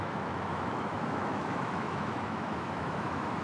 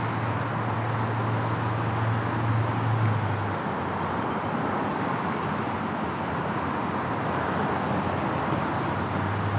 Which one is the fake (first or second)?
first